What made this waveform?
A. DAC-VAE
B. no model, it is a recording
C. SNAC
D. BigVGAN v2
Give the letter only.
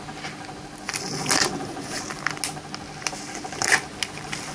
B